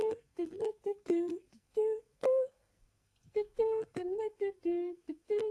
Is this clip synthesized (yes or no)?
yes